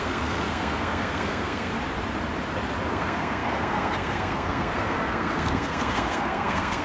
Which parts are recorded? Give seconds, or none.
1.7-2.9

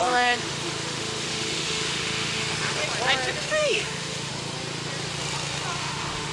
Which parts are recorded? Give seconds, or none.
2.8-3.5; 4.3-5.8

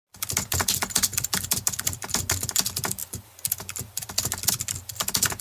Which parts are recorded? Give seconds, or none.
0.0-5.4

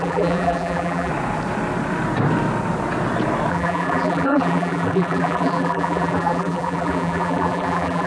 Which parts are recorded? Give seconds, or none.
1.1-3.5

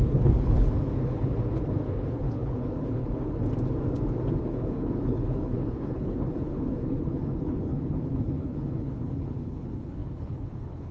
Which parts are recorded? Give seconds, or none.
3.4-4.4

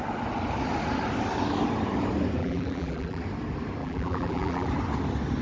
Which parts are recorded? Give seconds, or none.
0.0-2.4; 3.2-3.8; 4.7-5.4

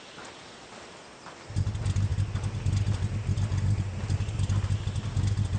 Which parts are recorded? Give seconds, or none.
0.0-5.6